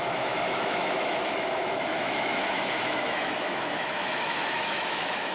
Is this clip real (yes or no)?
no